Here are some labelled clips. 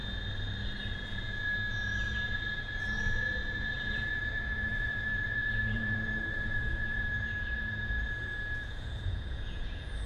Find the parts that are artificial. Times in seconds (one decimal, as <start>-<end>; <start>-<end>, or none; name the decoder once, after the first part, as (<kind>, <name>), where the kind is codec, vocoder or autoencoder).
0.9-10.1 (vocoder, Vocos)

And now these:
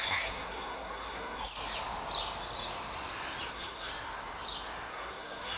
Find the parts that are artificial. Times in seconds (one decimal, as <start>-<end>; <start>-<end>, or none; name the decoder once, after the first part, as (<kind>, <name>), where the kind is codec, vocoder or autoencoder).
0.0-1.5 (codec, SNAC); 3.5-3.9; 4.9-5.6

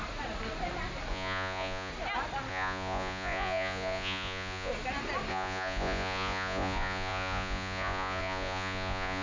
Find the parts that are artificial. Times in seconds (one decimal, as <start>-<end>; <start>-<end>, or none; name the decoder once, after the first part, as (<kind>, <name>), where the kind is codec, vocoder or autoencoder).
1.1-1.9 (vocoder, Vocos); 2.5-4.7; 5.3-9.2

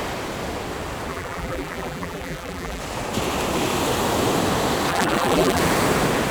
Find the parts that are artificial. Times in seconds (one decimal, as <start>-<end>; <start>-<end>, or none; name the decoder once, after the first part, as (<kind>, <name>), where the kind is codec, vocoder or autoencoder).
1.1-2.8 (vocoder, BigVGAN v2); 4.9-5.6

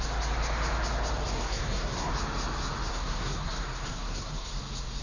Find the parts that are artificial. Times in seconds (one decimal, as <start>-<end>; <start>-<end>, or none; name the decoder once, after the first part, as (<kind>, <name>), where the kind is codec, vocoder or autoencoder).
1.4-2.1 (codec, SNAC); 2.9-4.5

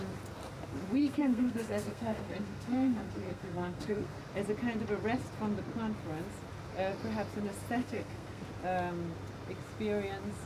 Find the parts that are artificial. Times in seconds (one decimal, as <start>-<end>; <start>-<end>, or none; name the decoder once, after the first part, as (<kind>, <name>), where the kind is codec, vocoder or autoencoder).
1.0-4.2 (codec, SNAC); 7.8-8.4

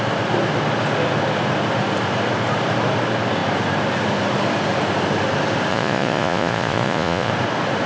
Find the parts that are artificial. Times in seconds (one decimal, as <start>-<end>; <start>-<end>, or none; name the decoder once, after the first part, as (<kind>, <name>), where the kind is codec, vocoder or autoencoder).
5.7-7.3 (vocoder, Vocos)